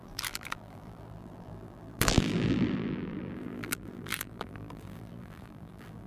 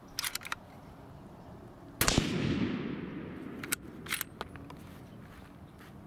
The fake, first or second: first